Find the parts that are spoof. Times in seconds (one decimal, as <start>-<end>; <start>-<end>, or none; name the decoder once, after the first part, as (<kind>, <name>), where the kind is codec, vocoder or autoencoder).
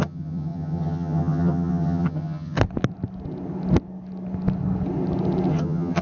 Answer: 0.0-2.6 (vocoder, HiFi-GAN); 5.5-6.0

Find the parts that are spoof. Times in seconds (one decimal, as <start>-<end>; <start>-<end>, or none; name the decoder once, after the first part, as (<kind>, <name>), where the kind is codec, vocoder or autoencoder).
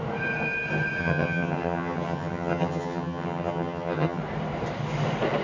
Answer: 1.0-4.2 (vocoder, HiFi-GAN)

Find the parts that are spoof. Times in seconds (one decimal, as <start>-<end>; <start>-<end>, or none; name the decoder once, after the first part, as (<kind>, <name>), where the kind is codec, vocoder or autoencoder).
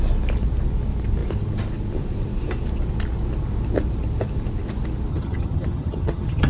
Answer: 5.1-6.5 (vocoder, HiFi-GAN)